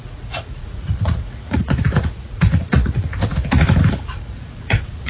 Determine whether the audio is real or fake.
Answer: fake